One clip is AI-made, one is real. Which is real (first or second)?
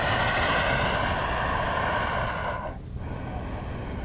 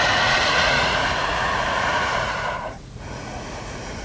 first